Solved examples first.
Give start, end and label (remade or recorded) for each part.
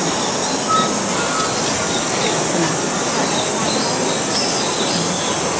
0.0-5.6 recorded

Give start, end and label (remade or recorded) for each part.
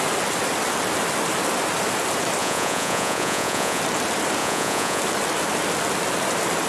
0.0-2.4 recorded; 2.4-3.8 remade; 3.8-4.4 recorded; 4.4-5.0 remade; 5.0-6.7 recorded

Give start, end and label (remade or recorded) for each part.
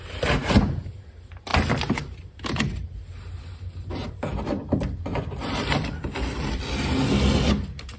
0.0-5.1 recorded; 5.1-6.6 remade; 6.6-8.0 recorded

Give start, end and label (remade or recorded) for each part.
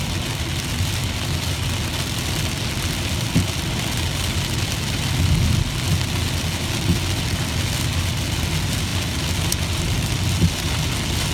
0.0-11.3 recorded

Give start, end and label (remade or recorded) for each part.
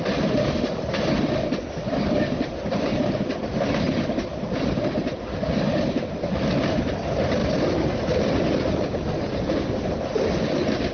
0.0-10.9 recorded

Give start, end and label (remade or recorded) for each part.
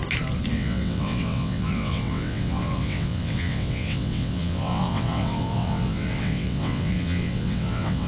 0.0-0.5 recorded; 0.5-8.1 remade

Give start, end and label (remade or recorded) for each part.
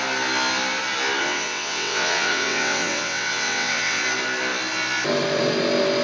0.0-1.2 recorded; 1.2-4.0 remade; 4.0-6.0 recorded